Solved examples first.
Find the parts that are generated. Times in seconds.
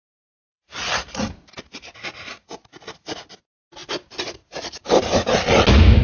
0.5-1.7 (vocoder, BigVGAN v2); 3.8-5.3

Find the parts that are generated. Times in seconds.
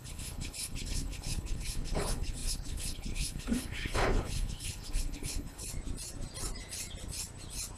0.0-5.7 (codec, HILCodec)